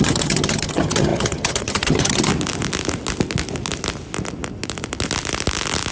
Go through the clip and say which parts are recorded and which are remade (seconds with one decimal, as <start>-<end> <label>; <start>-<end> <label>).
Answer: 0.0-2.3 remade; 2.3-5.9 recorded